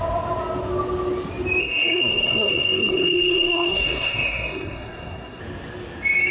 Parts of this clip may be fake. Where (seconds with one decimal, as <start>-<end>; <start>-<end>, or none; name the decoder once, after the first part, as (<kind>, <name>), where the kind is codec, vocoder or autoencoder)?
1.6-5.4 (codec, SNAC)